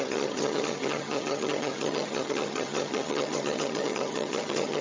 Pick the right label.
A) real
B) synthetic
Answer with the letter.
B